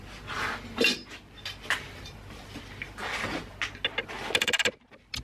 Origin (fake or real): real